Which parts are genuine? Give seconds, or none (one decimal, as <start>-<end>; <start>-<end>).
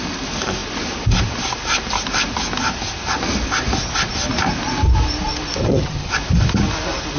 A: 0.0-5.6; 6.1-7.2